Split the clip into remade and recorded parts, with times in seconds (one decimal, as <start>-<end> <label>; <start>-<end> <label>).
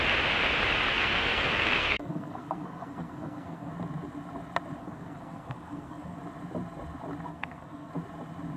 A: 0.0-0.9 recorded; 0.9-3.7 remade; 3.7-4.8 recorded; 4.8-6.2 remade; 6.2-7.3 recorded; 7.3-7.9 remade; 7.9-8.6 recorded